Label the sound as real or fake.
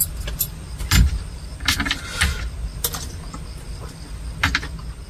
real